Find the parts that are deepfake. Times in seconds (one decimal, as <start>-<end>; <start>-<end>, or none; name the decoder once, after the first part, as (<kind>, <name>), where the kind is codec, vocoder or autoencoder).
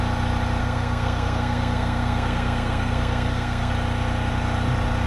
0.6-3.7 (codec, SNAC)